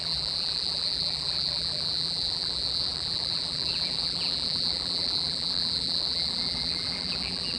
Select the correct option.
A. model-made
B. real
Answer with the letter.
A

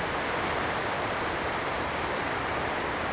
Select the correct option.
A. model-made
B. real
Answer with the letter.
B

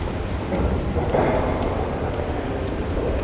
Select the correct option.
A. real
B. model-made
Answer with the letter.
A